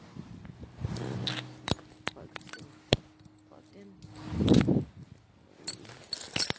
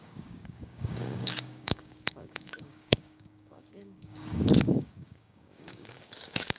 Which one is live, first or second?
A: first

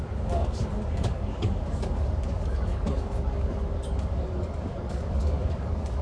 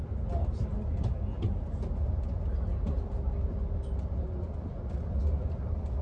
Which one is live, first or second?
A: second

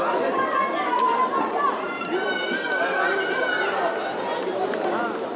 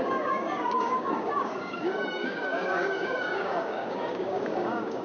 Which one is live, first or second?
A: first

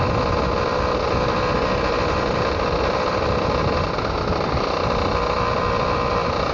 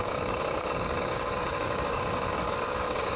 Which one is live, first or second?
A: first